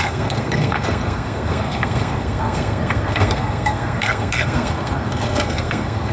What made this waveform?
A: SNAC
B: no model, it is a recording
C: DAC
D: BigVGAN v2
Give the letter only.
A